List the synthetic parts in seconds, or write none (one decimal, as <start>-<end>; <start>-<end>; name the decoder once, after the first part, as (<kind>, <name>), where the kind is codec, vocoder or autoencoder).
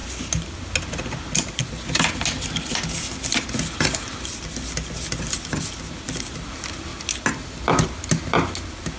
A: none